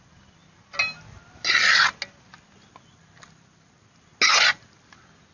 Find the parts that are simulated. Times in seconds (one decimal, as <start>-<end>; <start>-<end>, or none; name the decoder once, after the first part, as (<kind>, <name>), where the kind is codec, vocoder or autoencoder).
none